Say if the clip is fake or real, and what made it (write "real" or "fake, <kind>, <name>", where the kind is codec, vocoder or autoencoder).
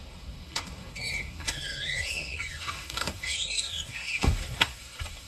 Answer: fake, codec, SNAC